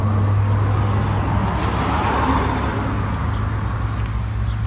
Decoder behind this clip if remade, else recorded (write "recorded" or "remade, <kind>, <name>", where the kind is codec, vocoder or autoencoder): recorded